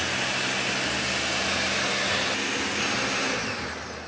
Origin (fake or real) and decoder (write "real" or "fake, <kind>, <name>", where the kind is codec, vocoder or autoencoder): real